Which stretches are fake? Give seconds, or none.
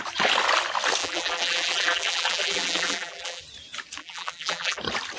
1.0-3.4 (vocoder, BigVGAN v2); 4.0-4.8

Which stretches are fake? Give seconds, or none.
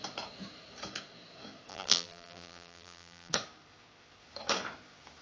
1.7-3.3 (vocoder, BigVGAN v2)